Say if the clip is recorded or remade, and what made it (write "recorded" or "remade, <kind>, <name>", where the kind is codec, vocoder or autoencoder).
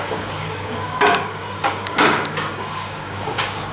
remade, codec, DAC